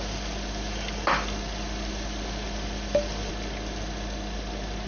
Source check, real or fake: real